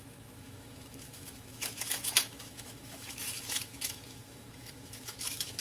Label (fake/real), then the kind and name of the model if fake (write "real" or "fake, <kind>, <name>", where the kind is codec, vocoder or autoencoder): fake, autoencoder, DAC-VAE